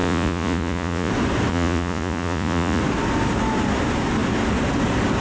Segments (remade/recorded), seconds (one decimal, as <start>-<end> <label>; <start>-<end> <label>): 0.0-1.1 remade; 1.1-1.5 recorded; 1.5-2.8 remade; 2.8-5.2 recorded